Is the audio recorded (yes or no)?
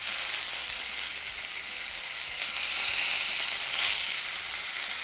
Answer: yes